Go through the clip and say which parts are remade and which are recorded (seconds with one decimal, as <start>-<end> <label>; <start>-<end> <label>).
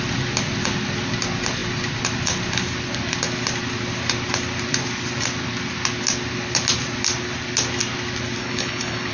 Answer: 0.0-8.4 recorded; 8.4-9.1 remade